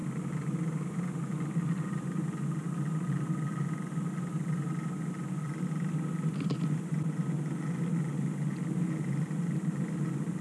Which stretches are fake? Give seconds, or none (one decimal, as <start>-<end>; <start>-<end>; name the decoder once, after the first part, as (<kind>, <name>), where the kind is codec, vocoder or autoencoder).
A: none